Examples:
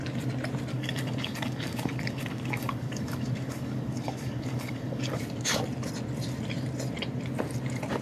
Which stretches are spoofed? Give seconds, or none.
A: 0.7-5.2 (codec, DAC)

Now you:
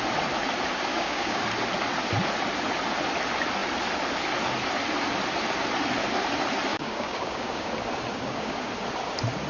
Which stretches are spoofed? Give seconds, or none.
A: 0.9-1.4 (codec, DAC); 6.7-7.7; 8.1-8.7

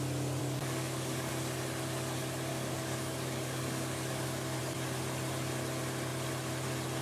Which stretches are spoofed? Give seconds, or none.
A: 0.4-1.3 (codec, DAC); 2.5-4.6

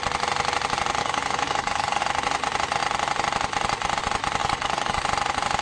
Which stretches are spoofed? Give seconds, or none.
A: 1.0-2.0 (codec, DAC); 4.4-5.0

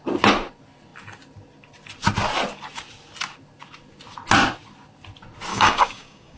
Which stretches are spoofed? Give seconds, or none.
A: 5.5-6.4 (codec, DAC)